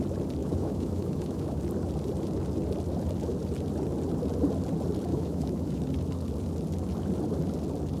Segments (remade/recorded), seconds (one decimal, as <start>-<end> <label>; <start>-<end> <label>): 0.0-0.4 recorded; 0.4-1.6 remade; 1.6-5.1 recorded; 5.1-5.8 remade; 5.8-8.0 recorded